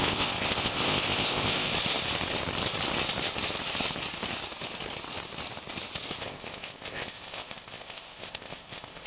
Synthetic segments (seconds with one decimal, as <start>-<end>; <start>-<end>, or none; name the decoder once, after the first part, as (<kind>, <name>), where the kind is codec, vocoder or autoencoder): 0.0-1.7 (codec, ZipCodec); 6.2-9.1